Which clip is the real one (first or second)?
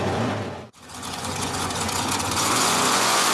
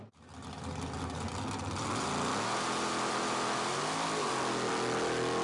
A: second